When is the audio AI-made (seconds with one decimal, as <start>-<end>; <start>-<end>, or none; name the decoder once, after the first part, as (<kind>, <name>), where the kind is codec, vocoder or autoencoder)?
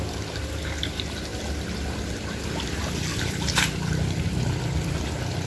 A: 3.1-5.1 (vocoder, BigVGAN v2)